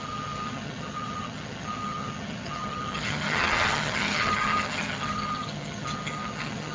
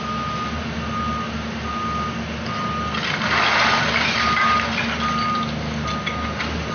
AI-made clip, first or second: first